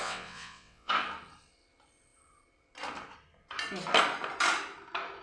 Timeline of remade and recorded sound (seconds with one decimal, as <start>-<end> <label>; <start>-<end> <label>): 0.0-0.9 remade; 0.9-5.2 recorded